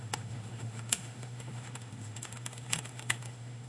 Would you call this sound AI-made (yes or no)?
yes